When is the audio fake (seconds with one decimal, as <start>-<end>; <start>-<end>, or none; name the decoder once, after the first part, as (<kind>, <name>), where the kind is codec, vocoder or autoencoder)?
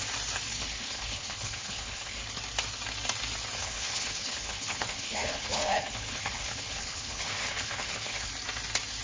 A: 0.5-2.2 (codec, HILCodec); 3.6-8.3